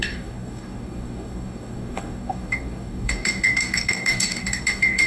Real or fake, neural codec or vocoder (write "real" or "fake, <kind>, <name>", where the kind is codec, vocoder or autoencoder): fake, codec, DAC